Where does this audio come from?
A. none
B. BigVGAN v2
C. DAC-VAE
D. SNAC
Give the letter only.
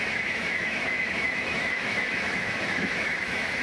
C